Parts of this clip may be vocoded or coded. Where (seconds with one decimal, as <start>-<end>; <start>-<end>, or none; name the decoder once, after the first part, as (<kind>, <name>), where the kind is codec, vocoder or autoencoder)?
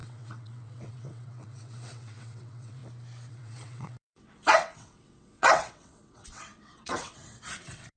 0.0-2.8 (vocoder, WaveNeXt); 3.3-8.0